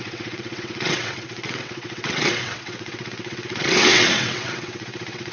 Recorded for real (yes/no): no